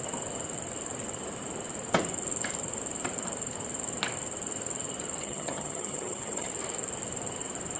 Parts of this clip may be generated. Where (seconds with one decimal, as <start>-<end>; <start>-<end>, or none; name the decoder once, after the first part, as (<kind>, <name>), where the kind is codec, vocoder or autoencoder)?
5.2-6.5 (vocoder, HiFi-GAN)